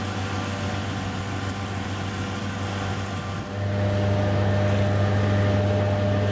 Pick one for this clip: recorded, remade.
recorded